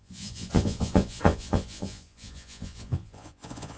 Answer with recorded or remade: remade